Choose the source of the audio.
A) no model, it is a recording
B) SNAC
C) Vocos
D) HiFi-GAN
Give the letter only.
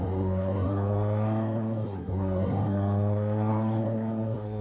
B